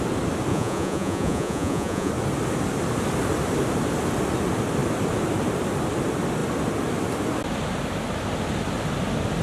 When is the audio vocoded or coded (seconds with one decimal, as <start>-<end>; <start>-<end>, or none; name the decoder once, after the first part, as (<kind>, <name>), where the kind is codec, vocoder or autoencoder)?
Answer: 0.5-2.1 (vocoder, Vocos)